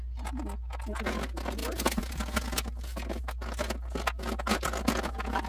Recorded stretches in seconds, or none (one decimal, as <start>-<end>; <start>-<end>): 0.0-5.5